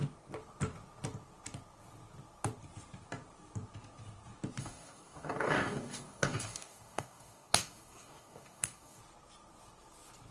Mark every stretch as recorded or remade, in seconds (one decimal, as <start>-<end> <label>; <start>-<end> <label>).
0.0-4.6 recorded; 4.6-9.0 remade; 9.0-10.3 recorded